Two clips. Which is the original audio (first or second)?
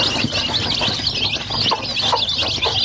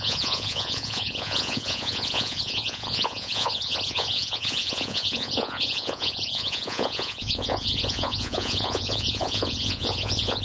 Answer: first